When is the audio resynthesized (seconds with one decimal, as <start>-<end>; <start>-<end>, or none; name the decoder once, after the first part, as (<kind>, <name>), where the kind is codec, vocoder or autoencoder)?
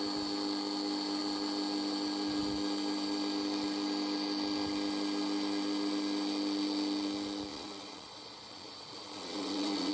7.5-9.9 (vocoder, Vocos)